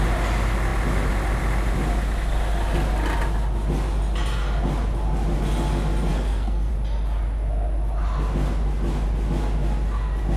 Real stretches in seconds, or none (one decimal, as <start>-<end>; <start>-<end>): 0.0-6.1; 6.7-10.4